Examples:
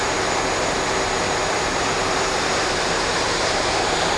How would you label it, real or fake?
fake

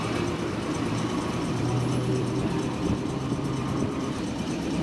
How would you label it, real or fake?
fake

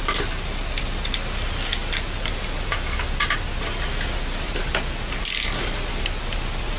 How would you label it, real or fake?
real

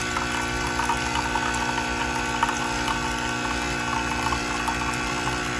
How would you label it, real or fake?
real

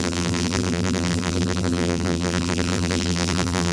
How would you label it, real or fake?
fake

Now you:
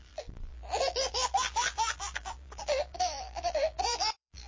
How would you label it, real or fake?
fake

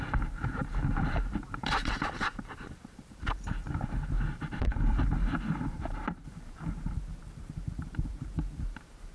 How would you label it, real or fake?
fake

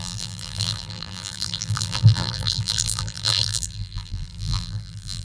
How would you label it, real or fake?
fake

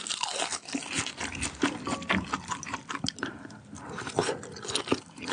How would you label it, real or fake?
real